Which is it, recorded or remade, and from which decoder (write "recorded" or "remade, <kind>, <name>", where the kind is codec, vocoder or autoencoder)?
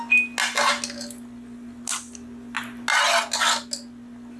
recorded